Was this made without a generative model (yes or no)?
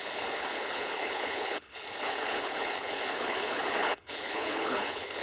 no